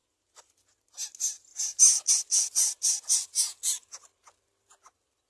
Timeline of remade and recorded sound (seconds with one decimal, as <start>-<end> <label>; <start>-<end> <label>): 0.0-5.3 recorded

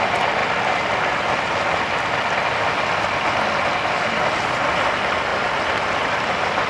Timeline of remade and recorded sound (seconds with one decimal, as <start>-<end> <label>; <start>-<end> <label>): 0.0-0.4 recorded; 0.4-2.6 remade; 2.6-6.7 recorded

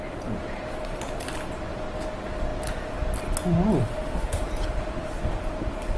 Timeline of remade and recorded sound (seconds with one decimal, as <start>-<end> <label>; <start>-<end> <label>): 0.0-3.8 recorded; 3.8-4.4 remade; 4.4-6.0 recorded

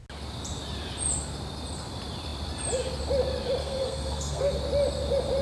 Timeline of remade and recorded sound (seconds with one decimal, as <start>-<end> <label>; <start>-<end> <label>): 0.0-3.6 recorded; 3.6-4.6 remade; 4.6-5.4 recorded

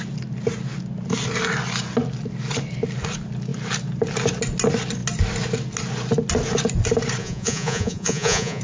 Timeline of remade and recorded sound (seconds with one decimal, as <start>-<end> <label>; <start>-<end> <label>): 0.0-7.2 recorded; 7.2-8.6 remade

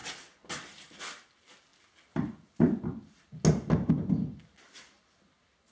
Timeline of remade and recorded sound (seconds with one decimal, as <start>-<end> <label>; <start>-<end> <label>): 0.0-5.7 recorded

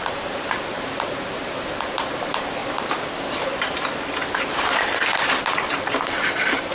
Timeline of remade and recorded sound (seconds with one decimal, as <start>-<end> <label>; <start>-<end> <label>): 0.0-2.6 remade; 2.6-5.6 recorded; 5.6-6.7 remade

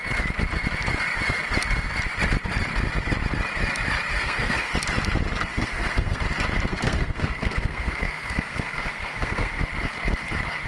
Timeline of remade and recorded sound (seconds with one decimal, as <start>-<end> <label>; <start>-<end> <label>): 0.0-4.1 recorded; 4.1-4.7 remade; 4.7-5.5 recorded; 5.5-6.2 remade; 6.2-6.7 recorded; 6.7-9.6 remade; 9.6-10.7 recorded